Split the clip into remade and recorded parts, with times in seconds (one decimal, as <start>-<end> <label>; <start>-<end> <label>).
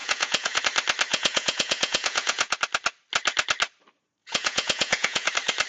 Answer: 0.0-0.6 remade; 0.6-1.1 recorded; 1.1-2.6 remade; 2.6-4.2 recorded; 4.2-5.3 remade; 5.3-5.7 recorded